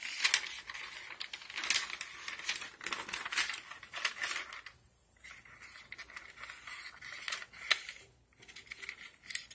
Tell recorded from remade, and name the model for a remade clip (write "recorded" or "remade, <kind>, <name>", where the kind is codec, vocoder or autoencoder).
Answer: recorded